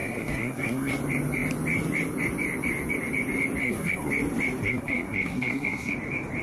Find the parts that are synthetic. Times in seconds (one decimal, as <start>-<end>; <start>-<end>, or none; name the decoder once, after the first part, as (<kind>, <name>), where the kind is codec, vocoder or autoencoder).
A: 0.0-0.9 (codec, SNAC); 3.6-4.1; 4.6-5.9